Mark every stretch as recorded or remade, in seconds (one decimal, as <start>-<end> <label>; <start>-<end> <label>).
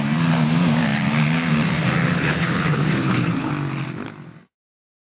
0.0-2.1 recorded; 2.1-3.5 remade; 3.5-5.0 recorded